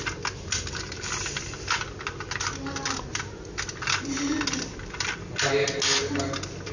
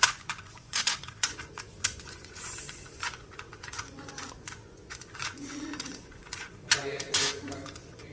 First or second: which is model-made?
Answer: second